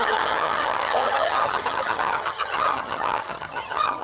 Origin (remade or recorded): remade